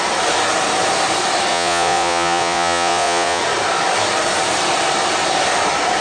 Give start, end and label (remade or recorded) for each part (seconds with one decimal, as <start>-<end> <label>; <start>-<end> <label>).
0.0-1.5 recorded; 1.5-3.4 remade; 3.4-6.0 recorded